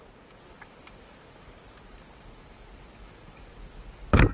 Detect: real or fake real